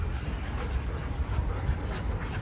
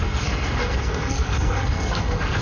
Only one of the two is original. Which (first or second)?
first